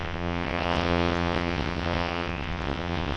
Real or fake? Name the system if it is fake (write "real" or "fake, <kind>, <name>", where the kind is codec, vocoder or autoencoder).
fake, vocoder, WaveNeXt